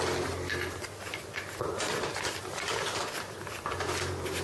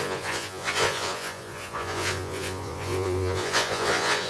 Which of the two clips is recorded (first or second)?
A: first